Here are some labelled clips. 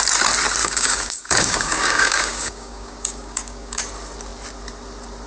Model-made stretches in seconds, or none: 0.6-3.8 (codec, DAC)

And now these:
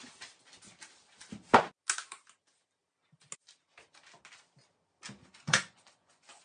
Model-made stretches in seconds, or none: 5.2-6.4 (vocoder, Vocos)